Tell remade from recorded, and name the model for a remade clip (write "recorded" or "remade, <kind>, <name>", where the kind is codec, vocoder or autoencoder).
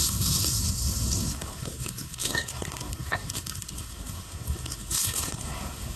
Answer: remade, codec, SNAC